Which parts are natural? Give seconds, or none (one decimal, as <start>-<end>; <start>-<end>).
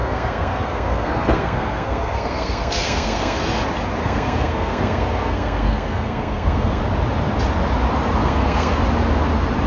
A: 3.4-4.0; 6.8-8.2; 8.8-9.7